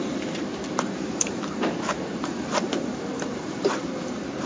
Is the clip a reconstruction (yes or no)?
yes